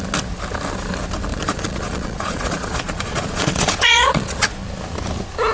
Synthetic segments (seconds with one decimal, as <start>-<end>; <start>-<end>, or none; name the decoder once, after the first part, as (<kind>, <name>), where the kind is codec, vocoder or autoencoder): 1.3-4.6 (vocoder, Vocos)